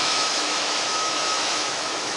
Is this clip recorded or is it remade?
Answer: remade